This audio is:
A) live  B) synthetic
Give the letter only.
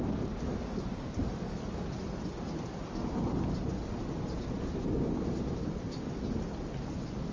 A